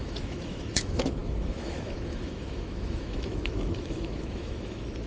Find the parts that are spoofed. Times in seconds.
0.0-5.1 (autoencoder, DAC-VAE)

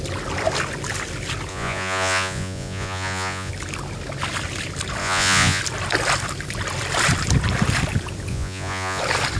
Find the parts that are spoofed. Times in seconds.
1.5-3.5 (vocoder, Vocos); 5.0-5.6; 8.3-9.0